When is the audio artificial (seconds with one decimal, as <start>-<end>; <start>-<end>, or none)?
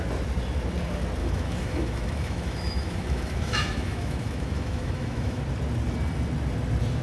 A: 1.2-5.4